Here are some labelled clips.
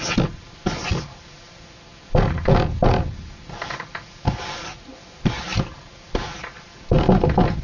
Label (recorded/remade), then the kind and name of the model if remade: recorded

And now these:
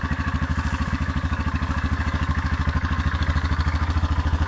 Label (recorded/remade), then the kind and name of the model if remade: remade, codec, DAC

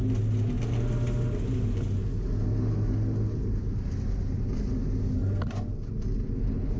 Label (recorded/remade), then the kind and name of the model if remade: recorded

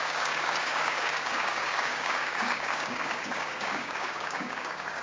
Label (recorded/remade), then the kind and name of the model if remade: remade, codec, DAC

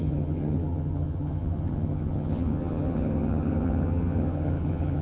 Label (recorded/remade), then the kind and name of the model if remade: remade, vocoder, HiFi-GAN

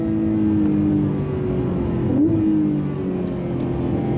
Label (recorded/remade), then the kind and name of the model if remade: recorded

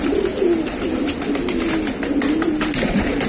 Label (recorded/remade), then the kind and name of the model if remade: recorded